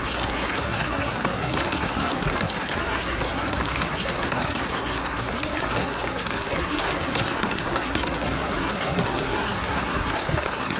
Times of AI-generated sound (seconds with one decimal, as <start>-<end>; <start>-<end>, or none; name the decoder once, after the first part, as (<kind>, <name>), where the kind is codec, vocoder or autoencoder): 0.0-10.8 (codec, SNAC)